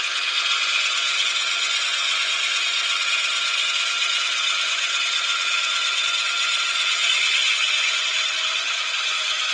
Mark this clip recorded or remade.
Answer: remade